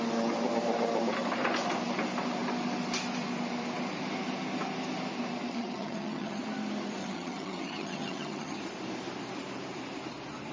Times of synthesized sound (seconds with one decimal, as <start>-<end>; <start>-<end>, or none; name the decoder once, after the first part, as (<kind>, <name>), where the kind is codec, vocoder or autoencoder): 5.5-6.4 (vocoder, HiFi-GAN); 7.0-8.6